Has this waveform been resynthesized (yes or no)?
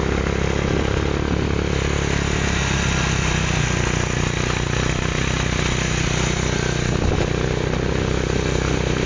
no